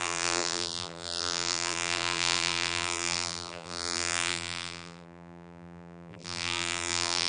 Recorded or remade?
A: remade